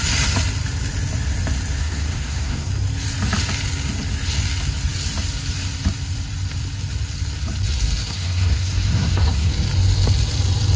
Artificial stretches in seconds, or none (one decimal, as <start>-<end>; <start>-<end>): 1.8-2.7; 8.0-9.5